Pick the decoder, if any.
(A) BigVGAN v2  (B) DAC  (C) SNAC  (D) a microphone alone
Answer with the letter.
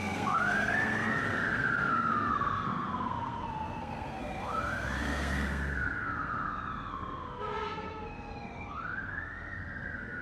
C